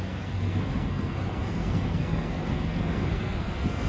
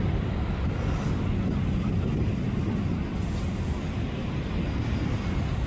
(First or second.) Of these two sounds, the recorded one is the second